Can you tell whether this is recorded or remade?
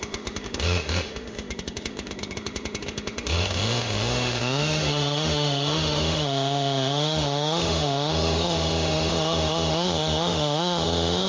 remade